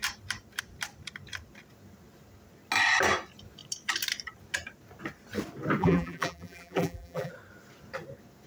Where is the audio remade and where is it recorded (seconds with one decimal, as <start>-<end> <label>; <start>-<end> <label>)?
0.0-5.8 recorded; 5.8-7.3 remade; 7.3-8.5 recorded